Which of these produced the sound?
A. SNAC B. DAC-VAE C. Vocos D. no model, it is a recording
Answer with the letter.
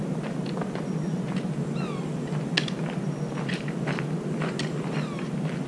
D